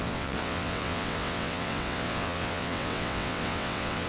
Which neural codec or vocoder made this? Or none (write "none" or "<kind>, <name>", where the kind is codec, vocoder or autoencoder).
vocoder, WaveNeXt